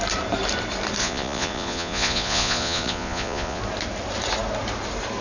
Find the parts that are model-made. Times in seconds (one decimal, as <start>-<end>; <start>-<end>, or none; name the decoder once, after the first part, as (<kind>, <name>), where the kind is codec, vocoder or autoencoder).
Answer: 1.0-3.6 (vocoder, Vocos)